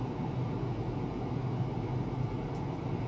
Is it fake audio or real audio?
real